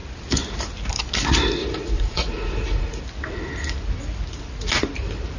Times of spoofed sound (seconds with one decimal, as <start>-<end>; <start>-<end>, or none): 1.6-3.0